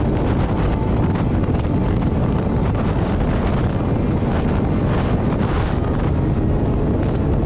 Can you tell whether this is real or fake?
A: real